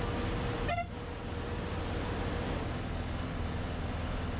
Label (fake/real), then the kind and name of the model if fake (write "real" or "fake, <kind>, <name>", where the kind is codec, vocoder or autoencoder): real